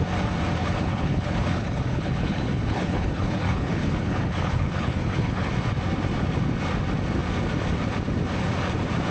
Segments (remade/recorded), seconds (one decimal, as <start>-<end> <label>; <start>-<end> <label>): 0.0-0.6 recorded; 0.6-5.5 remade; 5.5-9.1 recorded